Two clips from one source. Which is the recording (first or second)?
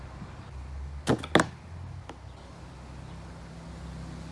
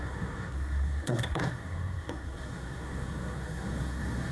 first